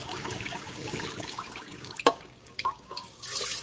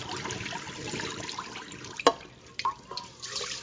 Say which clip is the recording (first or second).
second